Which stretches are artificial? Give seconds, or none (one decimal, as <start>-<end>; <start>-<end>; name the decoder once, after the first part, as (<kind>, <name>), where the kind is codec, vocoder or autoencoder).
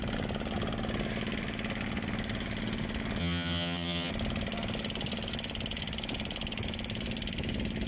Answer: 3.2-4.1 (vocoder, HiFi-GAN)